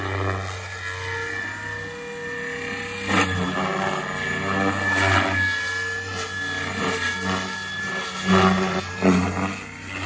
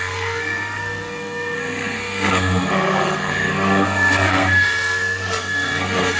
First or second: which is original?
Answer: first